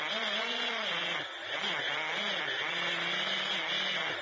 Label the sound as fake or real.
real